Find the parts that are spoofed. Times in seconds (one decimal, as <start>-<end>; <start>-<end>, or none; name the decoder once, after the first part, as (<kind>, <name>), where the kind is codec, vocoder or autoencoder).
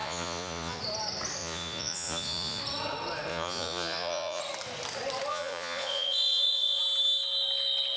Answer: 0.0-0.8 (vocoder, Vocos); 1.4-2.6; 3.3-4.4; 5.3-6.8